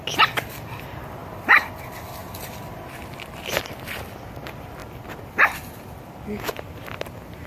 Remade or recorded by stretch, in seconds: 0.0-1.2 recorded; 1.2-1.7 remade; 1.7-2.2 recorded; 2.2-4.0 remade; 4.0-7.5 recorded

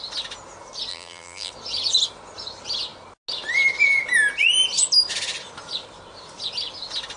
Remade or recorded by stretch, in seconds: 0.0-0.9 recorded; 0.9-1.5 remade; 1.5-7.2 recorded

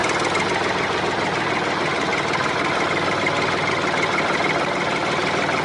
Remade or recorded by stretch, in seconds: 0.0-2.1 recorded; 2.1-3.7 remade; 3.7-5.6 recorded

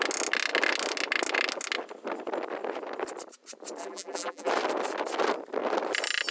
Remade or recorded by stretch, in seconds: 0.0-3.8 recorded; 3.8-4.5 remade; 4.5-6.3 recorded

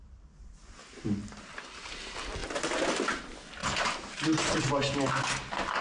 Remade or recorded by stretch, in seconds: 0.0-1.2 recorded; 1.2-1.9 remade; 1.9-2.4 recorded; 2.4-3.2 remade; 3.2-3.6 recorded; 3.6-4.6 remade; 4.6-5.8 recorded

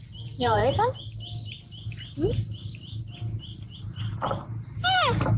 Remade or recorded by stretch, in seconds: 0.0-0.6 remade; 0.6-3.8 recorded; 3.8-5.4 remade

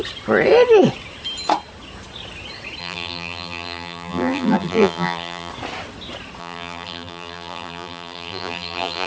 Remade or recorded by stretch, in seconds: 0.0-2.8 recorded; 2.8-5.5 remade; 5.5-6.4 recorded; 6.4-9.1 remade

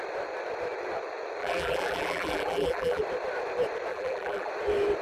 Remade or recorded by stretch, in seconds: 0.0-1.4 recorded; 1.4-3.0 remade; 3.0-3.9 recorded; 3.9-4.5 remade; 4.5-5.0 recorded